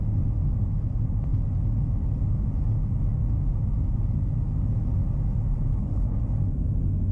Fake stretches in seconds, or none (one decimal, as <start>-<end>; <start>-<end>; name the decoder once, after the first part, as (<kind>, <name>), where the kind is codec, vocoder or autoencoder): 5.7-6.2 (codec, HILCodec)